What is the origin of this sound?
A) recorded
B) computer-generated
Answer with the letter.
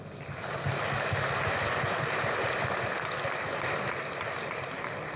A